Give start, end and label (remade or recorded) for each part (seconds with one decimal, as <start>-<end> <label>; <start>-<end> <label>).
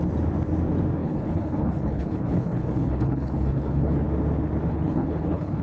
0.0-1.0 recorded; 1.0-4.0 remade; 4.0-4.7 recorded; 4.7-5.6 remade